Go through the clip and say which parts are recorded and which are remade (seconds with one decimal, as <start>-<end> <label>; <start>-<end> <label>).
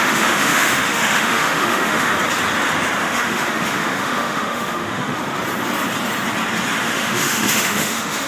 0.0-2.1 remade; 2.1-3.0 recorded; 3.0-5.2 remade; 5.2-6.8 recorded; 6.8-8.3 remade